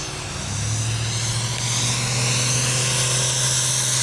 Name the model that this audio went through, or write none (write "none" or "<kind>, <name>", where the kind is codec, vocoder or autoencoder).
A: none